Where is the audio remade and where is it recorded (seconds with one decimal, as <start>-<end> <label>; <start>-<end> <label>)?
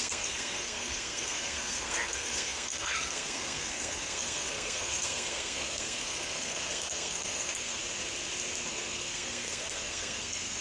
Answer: 0.0-7.8 remade; 7.8-8.7 recorded; 8.7-10.6 remade